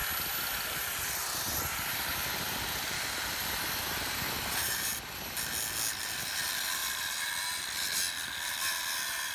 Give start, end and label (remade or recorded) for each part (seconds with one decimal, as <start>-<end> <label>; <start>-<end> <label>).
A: 0.0-5.0 remade; 5.0-6.8 recorded; 6.8-7.4 remade; 7.4-9.3 recorded